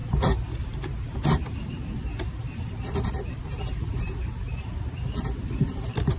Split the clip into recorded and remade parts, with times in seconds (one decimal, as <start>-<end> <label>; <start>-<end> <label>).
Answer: 0.0-6.2 remade